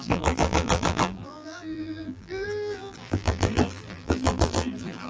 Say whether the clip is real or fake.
fake